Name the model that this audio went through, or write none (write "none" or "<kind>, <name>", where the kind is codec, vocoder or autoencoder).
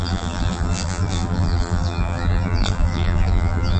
vocoder, BigVGAN v2